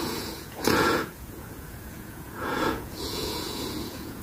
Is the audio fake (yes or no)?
yes